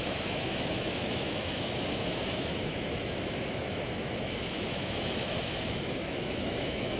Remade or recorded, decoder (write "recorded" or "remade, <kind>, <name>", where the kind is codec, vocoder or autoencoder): remade, autoencoder, DAC-VAE